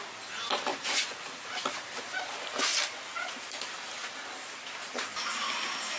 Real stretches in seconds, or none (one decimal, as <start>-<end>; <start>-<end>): 0.0-0.7; 1.2-6.0